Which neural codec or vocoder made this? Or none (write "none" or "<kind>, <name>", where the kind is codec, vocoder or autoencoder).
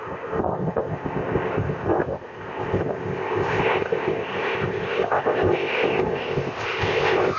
codec, ZipCodec